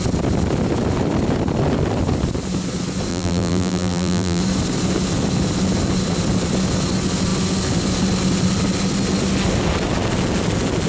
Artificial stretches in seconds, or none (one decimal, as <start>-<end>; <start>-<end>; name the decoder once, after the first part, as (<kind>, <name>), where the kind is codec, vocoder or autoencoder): 3.1-4.4 (vocoder, BigVGAN v2)